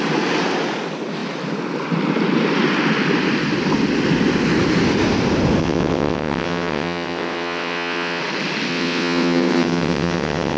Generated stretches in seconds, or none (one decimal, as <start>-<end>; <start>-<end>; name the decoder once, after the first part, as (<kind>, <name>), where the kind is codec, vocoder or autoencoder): 5.6-8.2 (vocoder, WaveNeXt); 8.7-10.6

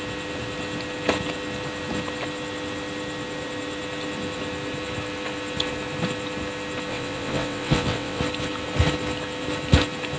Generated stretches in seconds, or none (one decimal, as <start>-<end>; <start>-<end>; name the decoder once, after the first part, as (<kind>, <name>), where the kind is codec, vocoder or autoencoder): 6.9-8.2 (vocoder, WaveNeXt)